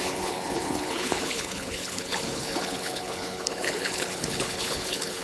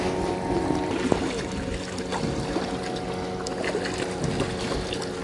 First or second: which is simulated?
first